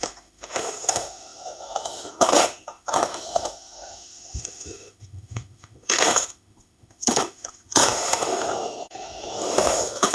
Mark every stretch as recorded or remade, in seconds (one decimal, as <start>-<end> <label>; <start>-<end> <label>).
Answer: 0.0-10.1 remade